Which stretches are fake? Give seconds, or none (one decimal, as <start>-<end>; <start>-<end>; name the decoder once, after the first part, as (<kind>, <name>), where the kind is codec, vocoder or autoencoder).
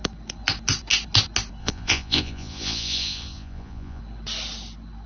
1.6-4.0 (vocoder, Vocos)